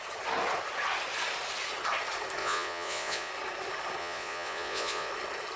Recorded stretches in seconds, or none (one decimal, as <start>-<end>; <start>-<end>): 0.0-2.4; 3.3-4.0; 5.1-5.6